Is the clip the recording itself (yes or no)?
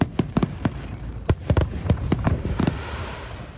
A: no